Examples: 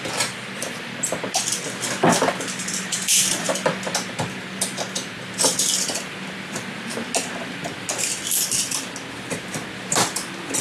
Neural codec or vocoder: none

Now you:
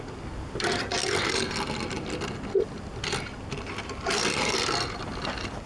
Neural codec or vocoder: none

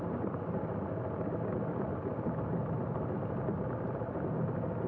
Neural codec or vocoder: none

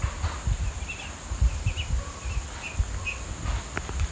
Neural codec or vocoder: none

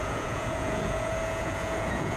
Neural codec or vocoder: vocoder, Vocos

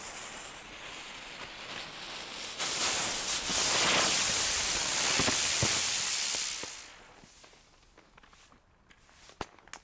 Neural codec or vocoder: none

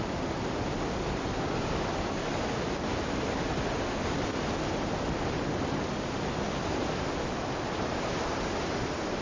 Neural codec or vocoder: none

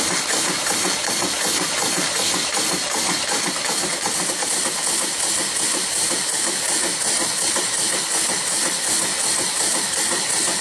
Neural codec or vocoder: none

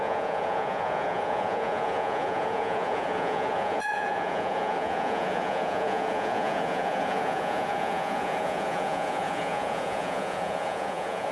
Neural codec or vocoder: vocoder, Vocos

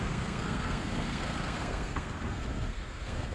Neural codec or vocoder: codec, SNAC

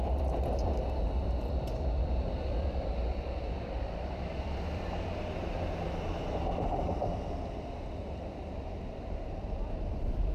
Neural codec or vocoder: vocoder, BigVGAN v2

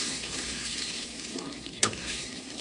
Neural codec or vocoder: codec, SNAC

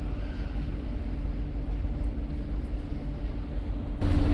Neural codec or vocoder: none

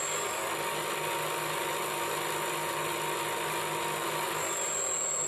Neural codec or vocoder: none